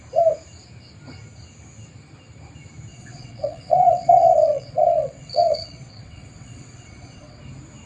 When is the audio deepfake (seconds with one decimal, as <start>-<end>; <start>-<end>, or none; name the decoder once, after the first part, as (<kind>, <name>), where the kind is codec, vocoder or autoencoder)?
2.9-7.4 (vocoder, WaveNeXt)